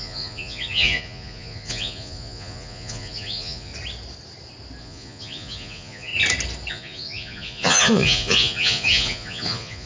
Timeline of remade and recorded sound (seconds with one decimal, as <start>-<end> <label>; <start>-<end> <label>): 0.0-3.7 remade; 3.7-4.8 recorded; 4.8-6.1 remade; 6.1-6.7 recorded; 6.7-9.9 remade